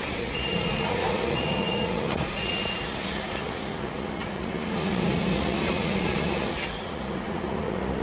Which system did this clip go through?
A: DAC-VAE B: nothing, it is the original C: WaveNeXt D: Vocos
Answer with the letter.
D